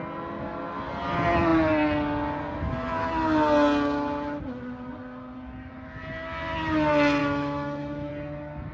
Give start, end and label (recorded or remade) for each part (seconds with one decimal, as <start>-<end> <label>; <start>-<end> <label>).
0.0-7.2 recorded; 7.2-8.1 remade; 8.1-8.7 recorded